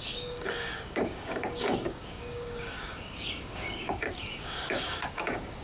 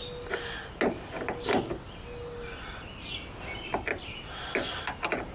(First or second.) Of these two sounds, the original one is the second